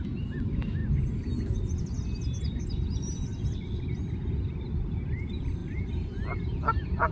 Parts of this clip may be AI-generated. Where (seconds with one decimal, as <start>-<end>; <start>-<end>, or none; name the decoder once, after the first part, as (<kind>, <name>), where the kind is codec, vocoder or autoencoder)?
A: none